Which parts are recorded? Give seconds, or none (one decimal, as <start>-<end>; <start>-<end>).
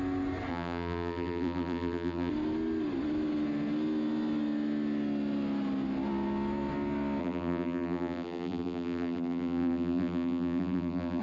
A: 0.0-0.5; 2.3-7.2